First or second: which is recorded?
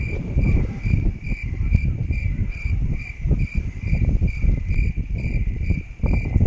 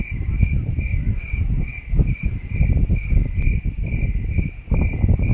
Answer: second